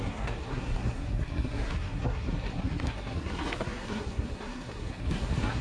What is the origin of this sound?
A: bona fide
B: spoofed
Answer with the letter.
B